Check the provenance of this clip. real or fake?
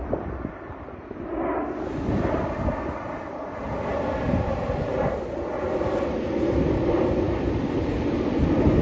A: real